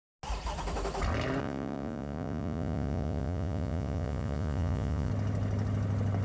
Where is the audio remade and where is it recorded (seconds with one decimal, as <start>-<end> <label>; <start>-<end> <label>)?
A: 0.0-1.4 recorded; 1.4-5.1 remade; 5.1-6.2 recorded